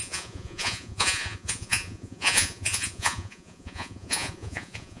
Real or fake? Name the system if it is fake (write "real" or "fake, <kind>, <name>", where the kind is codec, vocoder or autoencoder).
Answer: fake, vocoder, Vocos